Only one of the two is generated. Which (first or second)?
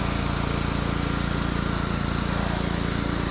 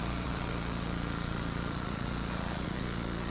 second